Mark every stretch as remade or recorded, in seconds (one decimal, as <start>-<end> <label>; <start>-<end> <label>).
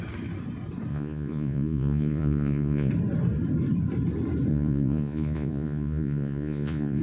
0.0-0.9 recorded; 0.9-2.9 remade; 2.9-4.5 recorded; 4.5-7.0 remade